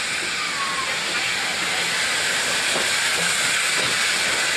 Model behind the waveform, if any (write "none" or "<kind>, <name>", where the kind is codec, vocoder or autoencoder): none